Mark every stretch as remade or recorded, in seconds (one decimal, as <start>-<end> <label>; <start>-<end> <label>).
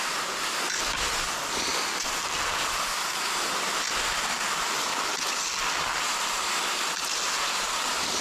0.0-8.2 recorded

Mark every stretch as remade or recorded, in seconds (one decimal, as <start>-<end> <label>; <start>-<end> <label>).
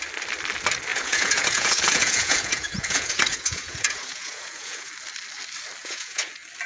0.0-0.9 recorded; 0.9-4.9 remade; 4.9-5.8 recorded; 5.8-6.3 remade; 6.3-6.7 recorded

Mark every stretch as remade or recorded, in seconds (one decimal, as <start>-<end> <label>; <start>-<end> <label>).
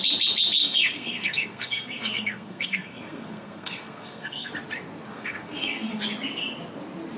0.0-0.6 recorded; 0.6-4.5 remade; 4.5-5.1 recorded; 5.1-6.0 remade; 6.0-7.2 recorded